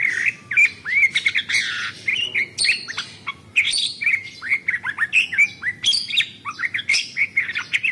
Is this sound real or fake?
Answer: real